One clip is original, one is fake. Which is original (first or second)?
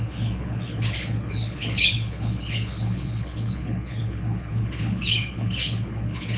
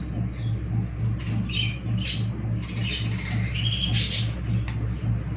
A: second